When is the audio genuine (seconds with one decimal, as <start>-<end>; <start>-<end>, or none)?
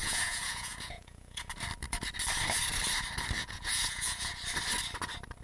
1.5-3.4; 4.3-5.4